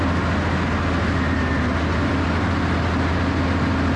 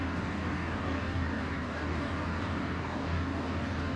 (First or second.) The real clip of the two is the first